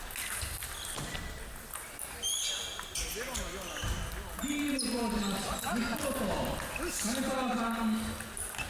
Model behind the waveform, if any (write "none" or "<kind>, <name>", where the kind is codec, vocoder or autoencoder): none